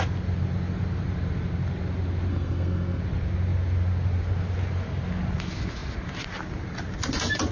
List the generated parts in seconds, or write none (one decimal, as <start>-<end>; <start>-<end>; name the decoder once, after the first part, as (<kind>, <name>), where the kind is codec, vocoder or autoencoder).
2.3-3.0 (codec, SNAC)